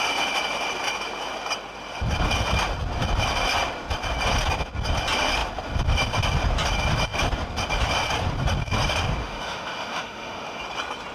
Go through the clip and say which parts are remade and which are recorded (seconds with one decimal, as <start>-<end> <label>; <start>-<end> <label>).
0.0-9.2 recorded; 9.2-10.6 remade; 10.6-11.1 recorded